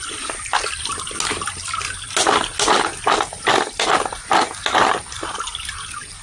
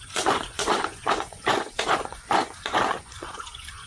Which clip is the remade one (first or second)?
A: second